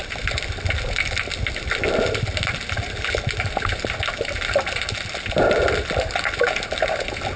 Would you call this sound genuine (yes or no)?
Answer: yes